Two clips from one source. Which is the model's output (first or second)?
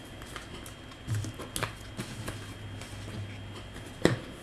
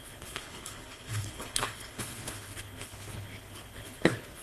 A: second